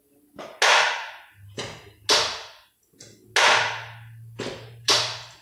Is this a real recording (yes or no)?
yes